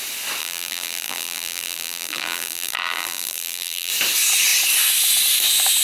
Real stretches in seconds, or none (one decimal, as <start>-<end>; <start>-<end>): 0.0-0.4; 3.9-5.8